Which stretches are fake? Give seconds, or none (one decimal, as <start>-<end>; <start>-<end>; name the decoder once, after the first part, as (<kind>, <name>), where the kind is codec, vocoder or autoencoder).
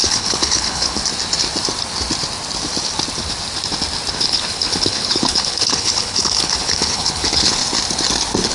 0.0-1.0 (codec, HILCodec); 4.1-7.6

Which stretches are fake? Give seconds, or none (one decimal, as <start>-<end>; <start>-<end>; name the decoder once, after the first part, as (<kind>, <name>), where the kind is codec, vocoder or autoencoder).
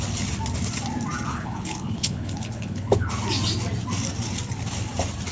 1.3-3.1 (codec, HILCodec)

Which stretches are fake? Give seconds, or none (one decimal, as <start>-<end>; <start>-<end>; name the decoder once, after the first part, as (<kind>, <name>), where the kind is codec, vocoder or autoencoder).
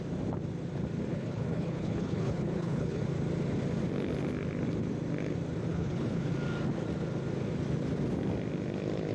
1.1-3.0 (codec, HILCodec); 5.7-6.3